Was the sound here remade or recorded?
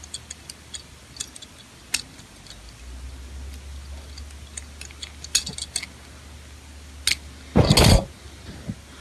recorded